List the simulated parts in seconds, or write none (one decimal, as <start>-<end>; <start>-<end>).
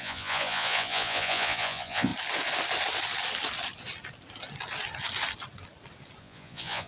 0.0-2.1; 6.2-6.9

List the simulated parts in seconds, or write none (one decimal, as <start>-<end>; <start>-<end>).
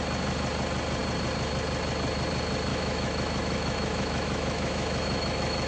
2.7-5.7